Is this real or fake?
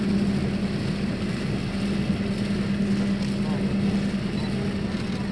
real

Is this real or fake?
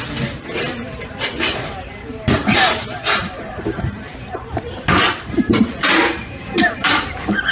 fake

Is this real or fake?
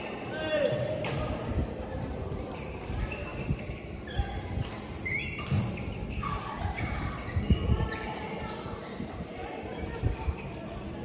fake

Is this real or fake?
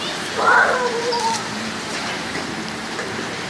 fake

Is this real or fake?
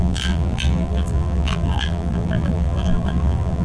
fake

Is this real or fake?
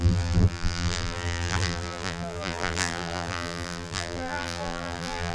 fake